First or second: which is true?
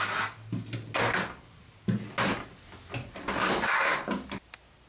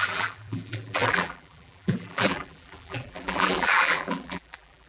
first